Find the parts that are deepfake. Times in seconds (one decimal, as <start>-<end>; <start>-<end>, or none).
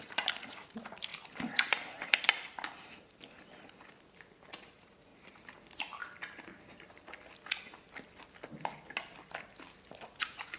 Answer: 0.0-1.1; 4.6-5.1; 10.2-10.6